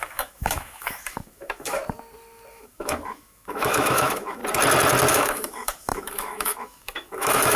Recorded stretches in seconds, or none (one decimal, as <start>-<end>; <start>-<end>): 1.8-2.5; 4.4-5.1